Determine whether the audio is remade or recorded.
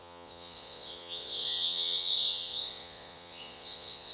remade